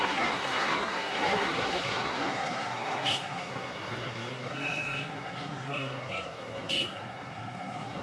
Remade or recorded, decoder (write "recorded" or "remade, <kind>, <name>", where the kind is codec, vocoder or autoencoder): remade, codec, SNAC